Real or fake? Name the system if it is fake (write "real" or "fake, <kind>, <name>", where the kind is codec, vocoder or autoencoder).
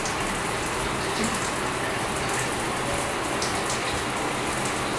real